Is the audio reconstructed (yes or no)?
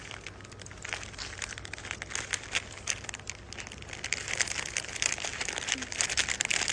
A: no